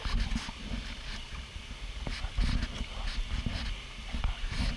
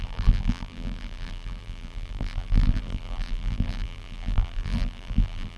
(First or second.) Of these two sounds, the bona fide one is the first